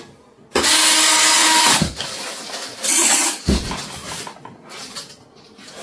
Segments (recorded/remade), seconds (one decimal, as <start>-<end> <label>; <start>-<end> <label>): 0.0-1.4 recorded; 1.4-2.4 remade; 2.4-2.9 recorded; 2.9-4.2 remade; 4.2-5.8 recorded